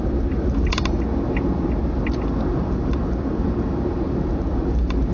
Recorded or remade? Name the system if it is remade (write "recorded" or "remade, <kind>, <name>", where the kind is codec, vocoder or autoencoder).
recorded